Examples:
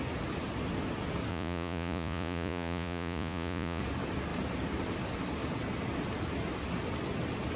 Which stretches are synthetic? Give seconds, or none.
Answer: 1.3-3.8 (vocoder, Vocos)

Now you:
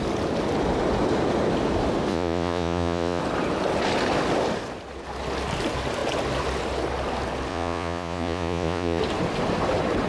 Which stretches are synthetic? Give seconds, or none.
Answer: 2.1-3.2 (vocoder, Vocos); 7.5-9.0